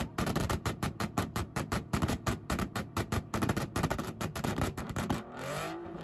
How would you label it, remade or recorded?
remade